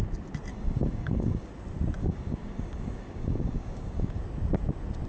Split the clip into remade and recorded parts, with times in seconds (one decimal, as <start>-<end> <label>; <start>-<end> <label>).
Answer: 0.0-0.5 recorded; 0.5-1.5 remade; 1.5-2.0 recorded; 2.0-4.2 remade; 4.2-5.1 recorded